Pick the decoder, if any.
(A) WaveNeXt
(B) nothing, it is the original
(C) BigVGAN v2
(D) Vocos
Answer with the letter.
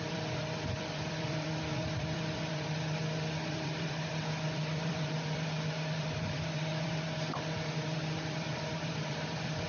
C